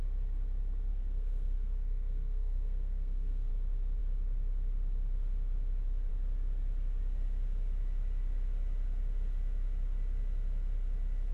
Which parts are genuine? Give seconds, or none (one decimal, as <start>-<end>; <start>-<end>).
0.0-0.9; 3.5-11.3